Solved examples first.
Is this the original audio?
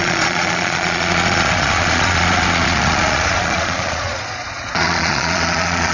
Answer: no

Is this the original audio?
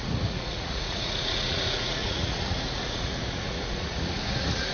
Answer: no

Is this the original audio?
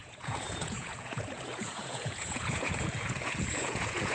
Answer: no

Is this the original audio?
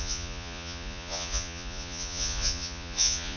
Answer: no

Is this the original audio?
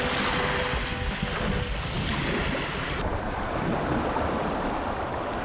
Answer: yes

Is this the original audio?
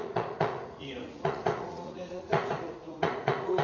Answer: no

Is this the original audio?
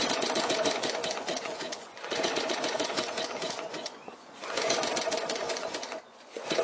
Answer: no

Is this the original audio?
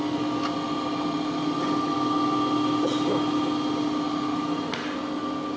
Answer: yes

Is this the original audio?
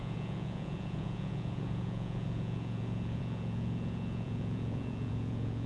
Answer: no